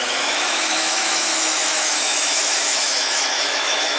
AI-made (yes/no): yes